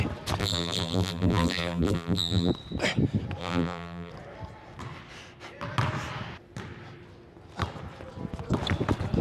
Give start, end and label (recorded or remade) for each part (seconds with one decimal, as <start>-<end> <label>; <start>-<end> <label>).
0.0-0.4 recorded; 0.4-2.5 remade; 2.5-3.4 recorded; 3.4-4.1 remade; 4.1-9.2 recorded